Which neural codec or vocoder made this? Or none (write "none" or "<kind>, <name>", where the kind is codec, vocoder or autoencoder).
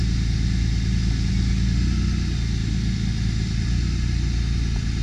none